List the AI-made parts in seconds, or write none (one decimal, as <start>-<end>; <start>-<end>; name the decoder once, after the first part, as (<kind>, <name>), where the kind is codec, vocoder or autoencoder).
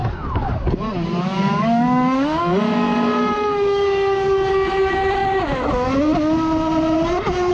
0.0-4.5 (codec, DAC)